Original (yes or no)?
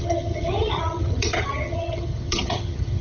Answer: no